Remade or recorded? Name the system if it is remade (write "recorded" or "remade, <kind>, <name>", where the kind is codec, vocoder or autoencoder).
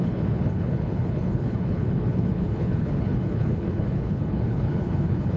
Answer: remade, codec, HILCodec